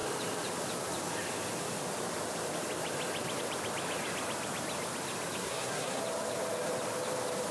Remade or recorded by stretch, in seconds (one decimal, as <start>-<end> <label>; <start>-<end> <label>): 0.0-5.4 recorded; 5.4-6.0 remade; 6.0-7.5 recorded